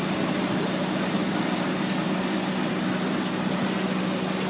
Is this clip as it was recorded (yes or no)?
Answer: yes